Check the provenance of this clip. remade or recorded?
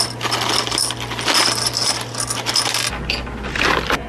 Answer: recorded